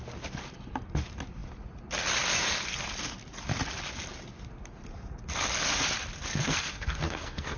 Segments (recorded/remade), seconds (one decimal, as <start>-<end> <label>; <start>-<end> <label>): 0.0-6.3 recorded; 6.3-7.6 remade